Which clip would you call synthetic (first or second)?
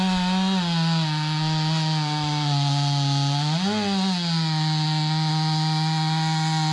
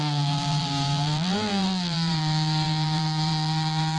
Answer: second